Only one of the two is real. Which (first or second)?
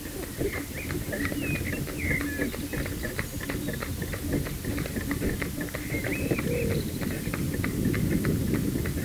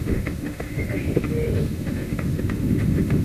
first